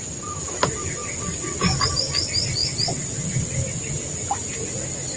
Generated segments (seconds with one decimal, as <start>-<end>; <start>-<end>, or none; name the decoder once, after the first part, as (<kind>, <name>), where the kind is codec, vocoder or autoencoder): none